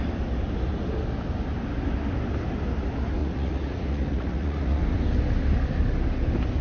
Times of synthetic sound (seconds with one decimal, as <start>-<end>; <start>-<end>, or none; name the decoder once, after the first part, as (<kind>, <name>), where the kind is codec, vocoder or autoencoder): 3.2-4.8 (vocoder, Vocos)